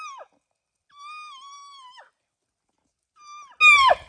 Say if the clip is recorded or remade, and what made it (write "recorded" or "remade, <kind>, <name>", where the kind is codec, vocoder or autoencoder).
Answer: recorded